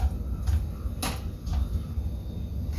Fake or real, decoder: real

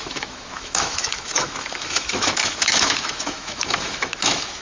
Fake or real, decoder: fake, autoencoder, DAC-VAE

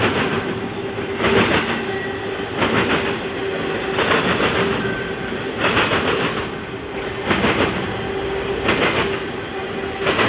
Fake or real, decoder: real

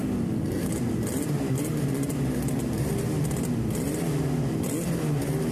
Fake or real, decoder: real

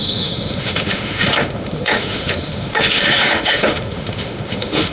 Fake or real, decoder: fake, autoencoder, DAC-VAE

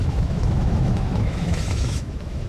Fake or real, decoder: fake, autoencoder, DAC-VAE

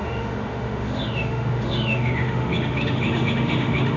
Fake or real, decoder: fake, autoencoder, DAC-VAE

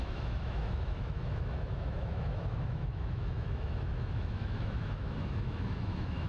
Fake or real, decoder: fake, autoencoder, DAC-VAE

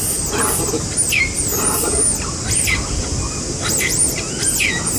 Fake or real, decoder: real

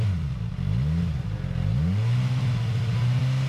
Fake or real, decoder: real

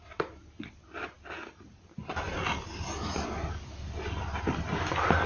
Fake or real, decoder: real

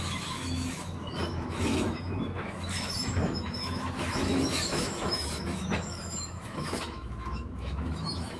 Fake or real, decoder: fake, autoencoder, DAC-VAE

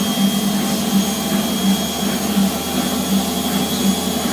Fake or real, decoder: real